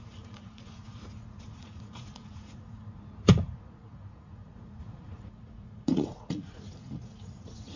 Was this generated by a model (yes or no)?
yes